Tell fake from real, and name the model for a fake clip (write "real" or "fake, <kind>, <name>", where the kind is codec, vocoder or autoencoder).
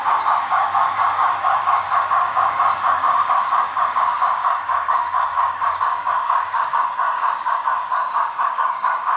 fake, codec, DAC